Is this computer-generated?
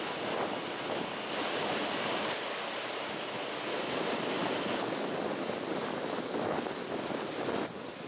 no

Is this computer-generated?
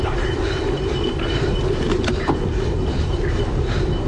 yes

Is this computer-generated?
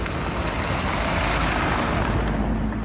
no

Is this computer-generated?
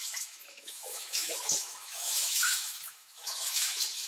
yes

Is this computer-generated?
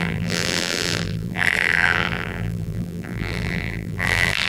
yes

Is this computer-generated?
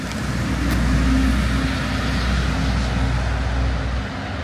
no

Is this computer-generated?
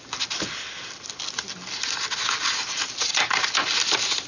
no